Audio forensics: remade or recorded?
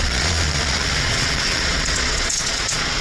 remade